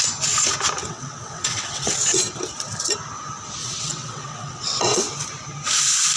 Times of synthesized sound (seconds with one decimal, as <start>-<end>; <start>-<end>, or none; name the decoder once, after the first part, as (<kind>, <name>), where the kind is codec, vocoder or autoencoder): 0.8-2.2 (vocoder, WaveNeXt); 3.6-5.0